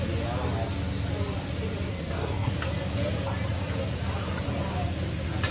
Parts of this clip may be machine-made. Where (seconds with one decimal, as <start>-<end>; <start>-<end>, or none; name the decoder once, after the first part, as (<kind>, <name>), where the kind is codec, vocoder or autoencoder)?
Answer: 1.9-2.5 (codec, SNAC)